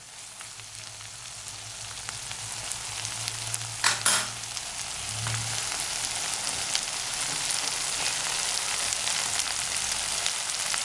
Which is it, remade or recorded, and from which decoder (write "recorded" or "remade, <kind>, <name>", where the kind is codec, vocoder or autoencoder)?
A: recorded